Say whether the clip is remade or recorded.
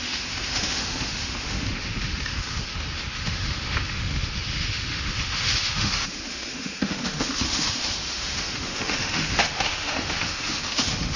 remade